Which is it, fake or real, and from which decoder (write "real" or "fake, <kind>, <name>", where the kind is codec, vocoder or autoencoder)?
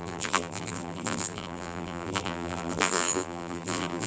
fake, vocoder, BigVGAN v2